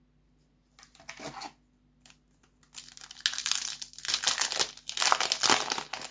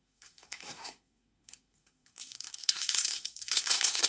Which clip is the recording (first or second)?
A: first